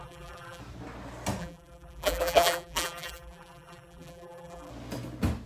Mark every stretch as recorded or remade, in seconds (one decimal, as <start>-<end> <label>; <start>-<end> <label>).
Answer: 0.0-0.6 remade; 0.6-1.4 recorded; 1.4-4.7 remade; 4.7-5.5 recorded